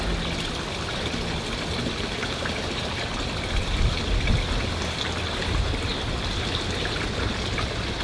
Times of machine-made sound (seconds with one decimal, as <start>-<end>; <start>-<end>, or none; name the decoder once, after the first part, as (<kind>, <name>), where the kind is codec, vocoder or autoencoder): none